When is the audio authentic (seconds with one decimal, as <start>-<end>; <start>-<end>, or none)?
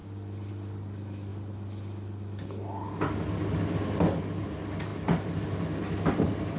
0.0-6.6